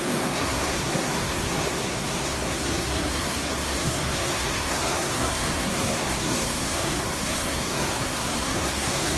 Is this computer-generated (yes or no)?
yes